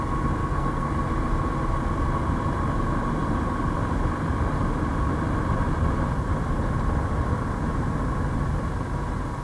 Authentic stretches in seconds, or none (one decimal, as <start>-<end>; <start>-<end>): 0.0-0.4; 0.9-9.4